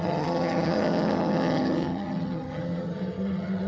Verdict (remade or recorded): remade